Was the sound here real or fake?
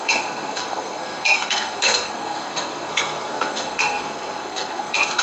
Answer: fake